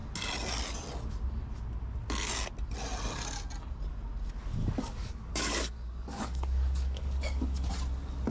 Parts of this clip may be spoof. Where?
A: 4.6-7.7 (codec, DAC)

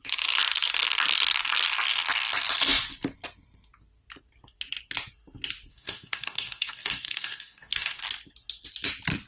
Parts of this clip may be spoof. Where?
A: 5.7-8.0 (codec, DAC)